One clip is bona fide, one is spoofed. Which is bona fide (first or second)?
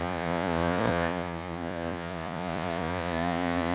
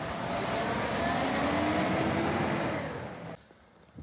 second